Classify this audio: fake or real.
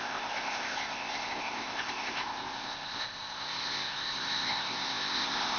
fake